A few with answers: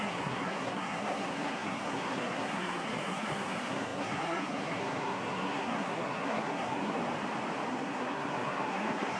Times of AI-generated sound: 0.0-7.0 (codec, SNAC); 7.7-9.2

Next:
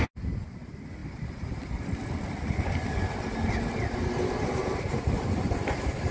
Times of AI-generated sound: none

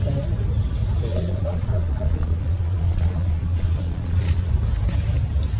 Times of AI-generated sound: 1.1-4.5 (vocoder, Vocos)

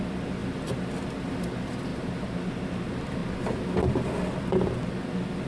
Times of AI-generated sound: 1.9-2.5 (vocoder, BigVGAN v2)